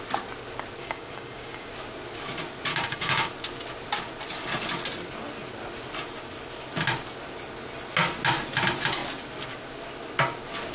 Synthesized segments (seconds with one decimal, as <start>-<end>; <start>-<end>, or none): 0.8-1.7; 2.7-3.3